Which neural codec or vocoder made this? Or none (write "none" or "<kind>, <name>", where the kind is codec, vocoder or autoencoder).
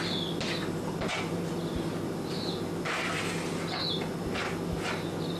none